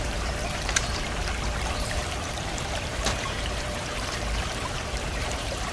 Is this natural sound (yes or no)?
no